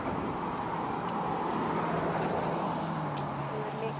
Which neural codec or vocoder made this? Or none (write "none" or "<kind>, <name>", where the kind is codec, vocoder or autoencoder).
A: none